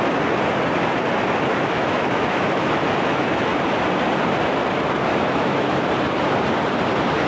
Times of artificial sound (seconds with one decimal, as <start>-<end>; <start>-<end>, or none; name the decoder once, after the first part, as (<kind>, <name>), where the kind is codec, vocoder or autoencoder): 1.5-3.5 (autoencoder, DAC-VAE); 5.1-5.9